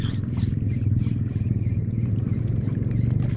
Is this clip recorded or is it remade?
recorded